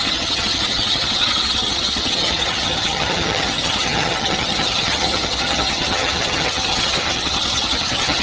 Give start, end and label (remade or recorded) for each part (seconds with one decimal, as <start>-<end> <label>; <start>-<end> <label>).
0.0-8.2 remade